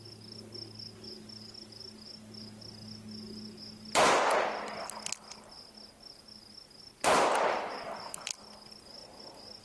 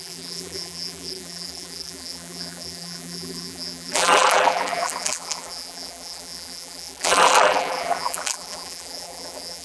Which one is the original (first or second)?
first